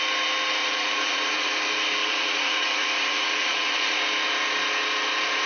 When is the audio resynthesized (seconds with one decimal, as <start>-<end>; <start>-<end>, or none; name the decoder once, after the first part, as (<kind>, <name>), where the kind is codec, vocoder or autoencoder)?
0.6-1.5 (vocoder, Vocos); 2.0-4.0